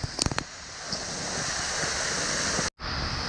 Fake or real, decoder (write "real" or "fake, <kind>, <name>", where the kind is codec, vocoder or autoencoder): real